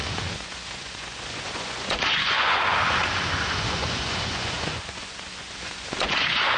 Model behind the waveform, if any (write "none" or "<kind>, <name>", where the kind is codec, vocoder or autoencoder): vocoder, Vocos